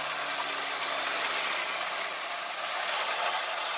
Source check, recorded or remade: recorded